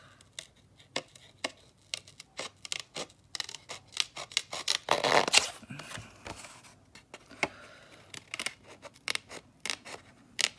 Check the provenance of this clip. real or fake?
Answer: real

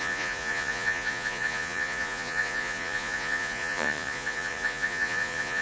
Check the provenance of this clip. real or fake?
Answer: fake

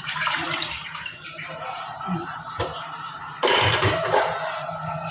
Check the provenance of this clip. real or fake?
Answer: fake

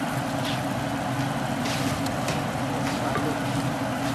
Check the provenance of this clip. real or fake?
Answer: real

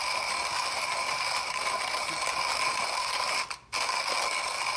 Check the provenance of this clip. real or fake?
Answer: real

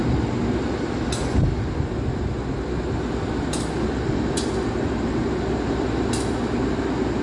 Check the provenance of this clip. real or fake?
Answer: real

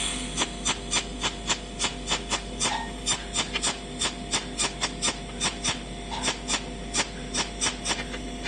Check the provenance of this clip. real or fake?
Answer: real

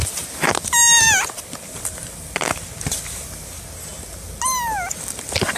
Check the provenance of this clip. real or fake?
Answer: real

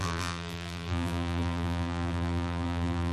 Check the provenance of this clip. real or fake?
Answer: fake